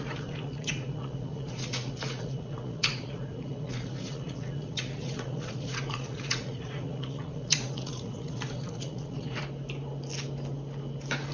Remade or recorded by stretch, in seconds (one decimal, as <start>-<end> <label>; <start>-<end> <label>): 0.0-9.4 remade; 9.4-11.3 recorded